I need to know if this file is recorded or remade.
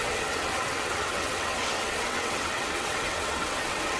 remade